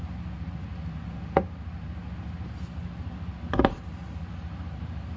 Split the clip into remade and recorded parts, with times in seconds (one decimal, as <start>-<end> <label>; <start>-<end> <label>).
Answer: 0.0-5.2 recorded